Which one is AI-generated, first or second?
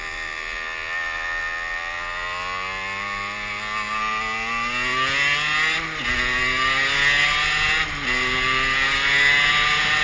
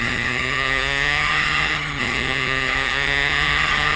second